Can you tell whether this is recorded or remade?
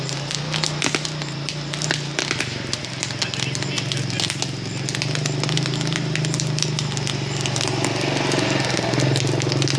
recorded